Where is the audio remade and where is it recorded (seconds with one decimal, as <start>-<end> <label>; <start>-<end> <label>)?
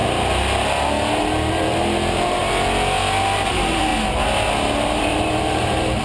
0.0-1.5 recorded; 1.5-2.4 remade; 2.4-3.5 recorded; 3.5-3.9 remade; 3.9-4.8 recorded; 4.8-6.0 remade